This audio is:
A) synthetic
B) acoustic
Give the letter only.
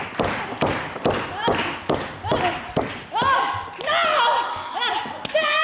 B